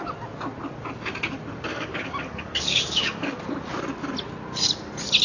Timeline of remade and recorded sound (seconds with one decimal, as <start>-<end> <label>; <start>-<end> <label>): 0.0-1.7 recorded; 1.7-3.4 remade; 3.4-5.2 recorded